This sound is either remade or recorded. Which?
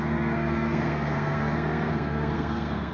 remade